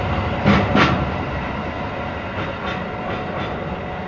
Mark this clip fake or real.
real